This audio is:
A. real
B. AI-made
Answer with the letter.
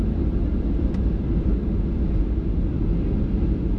A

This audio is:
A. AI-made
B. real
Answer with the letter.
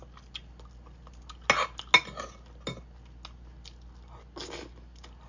B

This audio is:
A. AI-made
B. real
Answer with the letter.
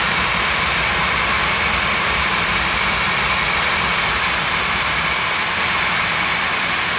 A